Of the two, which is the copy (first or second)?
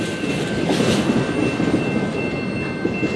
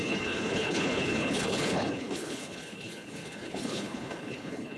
second